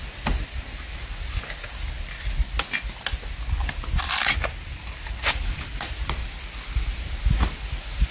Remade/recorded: recorded